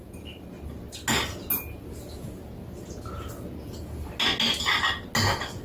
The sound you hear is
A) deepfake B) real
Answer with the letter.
B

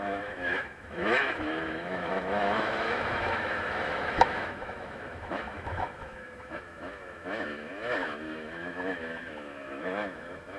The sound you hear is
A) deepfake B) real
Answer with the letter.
A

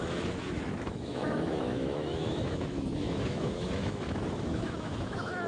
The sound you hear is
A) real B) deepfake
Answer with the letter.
B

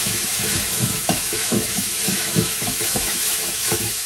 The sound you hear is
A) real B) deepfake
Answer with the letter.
B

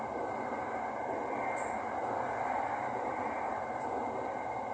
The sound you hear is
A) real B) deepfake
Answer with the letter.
A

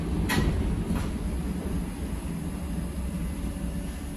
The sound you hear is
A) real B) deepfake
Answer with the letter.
A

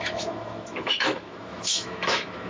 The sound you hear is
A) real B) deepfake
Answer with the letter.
B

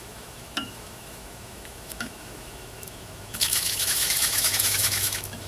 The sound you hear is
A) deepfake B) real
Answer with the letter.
A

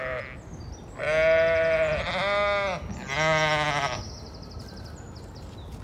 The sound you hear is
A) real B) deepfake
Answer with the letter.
A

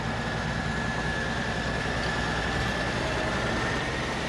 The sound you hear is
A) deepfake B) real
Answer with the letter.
B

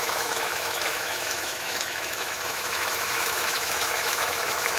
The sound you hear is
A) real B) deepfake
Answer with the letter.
B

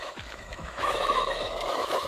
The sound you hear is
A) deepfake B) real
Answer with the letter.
A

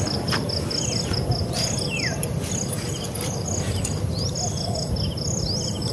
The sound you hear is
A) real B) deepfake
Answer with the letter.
A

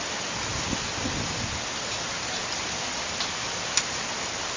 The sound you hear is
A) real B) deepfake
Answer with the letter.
A